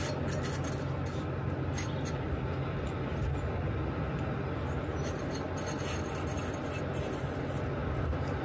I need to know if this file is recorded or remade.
recorded